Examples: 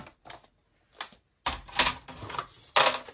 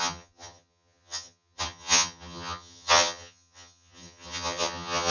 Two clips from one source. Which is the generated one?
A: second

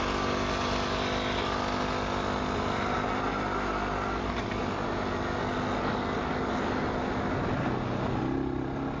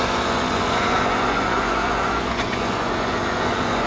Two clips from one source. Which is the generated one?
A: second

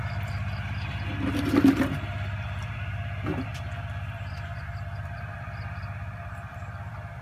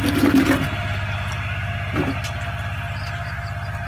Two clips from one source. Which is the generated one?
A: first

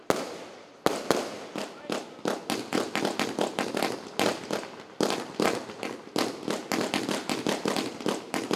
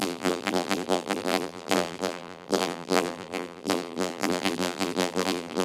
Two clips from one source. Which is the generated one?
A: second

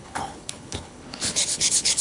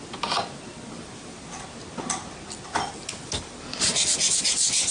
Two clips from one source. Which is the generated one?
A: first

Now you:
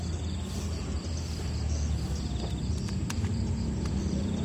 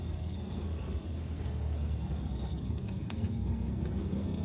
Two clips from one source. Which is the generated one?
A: second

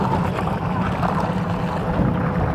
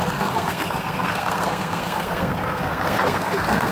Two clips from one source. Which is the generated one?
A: second